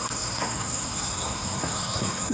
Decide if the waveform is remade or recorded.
remade